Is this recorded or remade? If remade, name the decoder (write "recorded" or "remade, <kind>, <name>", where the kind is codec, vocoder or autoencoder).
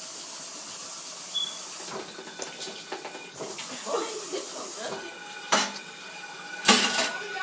recorded